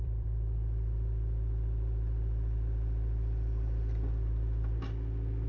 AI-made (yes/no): yes